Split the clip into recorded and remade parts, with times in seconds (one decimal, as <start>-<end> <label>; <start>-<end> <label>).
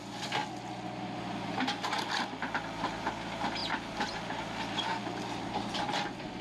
0.0-6.4 recorded